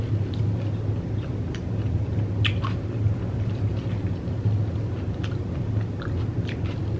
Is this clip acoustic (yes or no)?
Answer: yes